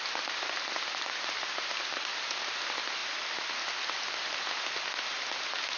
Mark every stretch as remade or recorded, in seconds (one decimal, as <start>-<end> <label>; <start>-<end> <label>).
0.0-5.8 recorded